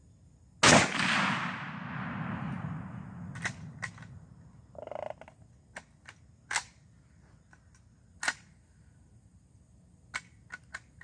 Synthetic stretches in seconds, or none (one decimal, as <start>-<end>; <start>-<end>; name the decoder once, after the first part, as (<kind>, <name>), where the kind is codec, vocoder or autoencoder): none